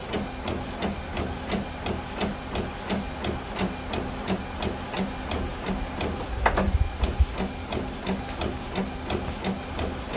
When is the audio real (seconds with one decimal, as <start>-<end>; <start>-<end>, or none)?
0.0-10.2

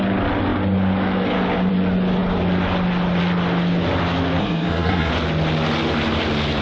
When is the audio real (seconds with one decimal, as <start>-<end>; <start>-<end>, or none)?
0.0-4.4; 5.1-6.6

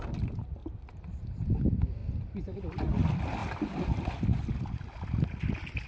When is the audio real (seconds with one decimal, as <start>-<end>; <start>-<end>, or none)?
0.0-5.9

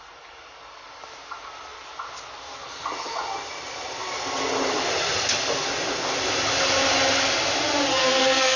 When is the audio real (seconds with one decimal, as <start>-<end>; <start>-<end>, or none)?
0.0-7.9

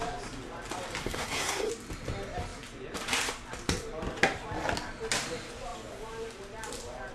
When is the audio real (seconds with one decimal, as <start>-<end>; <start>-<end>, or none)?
0.0-1.0; 1.7-7.1

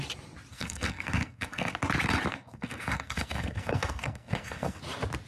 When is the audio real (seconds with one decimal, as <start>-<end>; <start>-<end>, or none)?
0.0-0.5; 1.7-2.3; 4.8-5.3

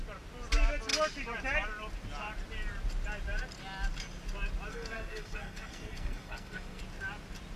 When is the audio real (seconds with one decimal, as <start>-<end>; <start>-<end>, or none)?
0.0-4.7; 6.8-7.6